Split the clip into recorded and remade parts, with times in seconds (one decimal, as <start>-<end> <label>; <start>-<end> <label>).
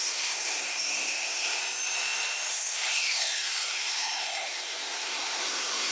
0.0-1.6 remade; 1.6-2.5 recorded; 2.5-5.9 remade